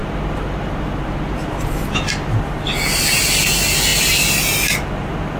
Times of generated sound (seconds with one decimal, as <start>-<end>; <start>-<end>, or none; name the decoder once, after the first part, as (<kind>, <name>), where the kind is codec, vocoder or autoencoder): none